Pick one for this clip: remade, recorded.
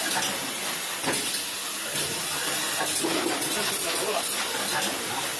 recorded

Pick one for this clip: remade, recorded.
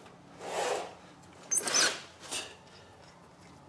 recorded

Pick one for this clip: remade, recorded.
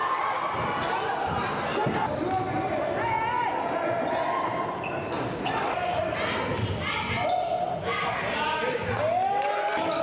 recorded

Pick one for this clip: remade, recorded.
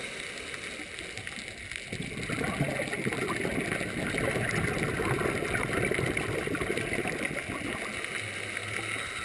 recorded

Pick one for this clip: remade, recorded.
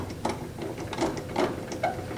recorded